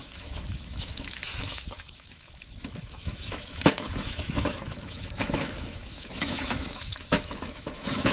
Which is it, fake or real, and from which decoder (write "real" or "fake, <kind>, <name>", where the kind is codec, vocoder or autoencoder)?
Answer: fake, autoencoder, DAC-VAE